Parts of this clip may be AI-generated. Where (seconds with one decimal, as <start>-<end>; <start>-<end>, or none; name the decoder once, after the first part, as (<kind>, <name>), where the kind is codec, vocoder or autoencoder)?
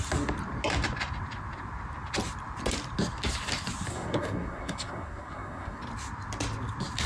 3.9-5.8 (codec, SNAC)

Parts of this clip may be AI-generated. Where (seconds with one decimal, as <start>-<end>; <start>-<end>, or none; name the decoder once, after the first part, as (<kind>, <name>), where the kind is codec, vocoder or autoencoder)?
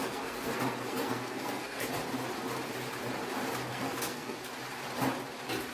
0.0-1.9 (codec, SNAC); 3.7-4.4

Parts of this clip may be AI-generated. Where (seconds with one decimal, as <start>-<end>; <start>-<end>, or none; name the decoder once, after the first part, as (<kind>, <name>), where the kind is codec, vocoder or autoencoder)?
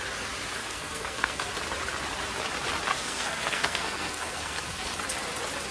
0.6-1.5 (codec, SNAC); 2.9-5.0